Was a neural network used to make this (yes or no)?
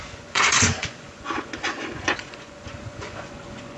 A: yes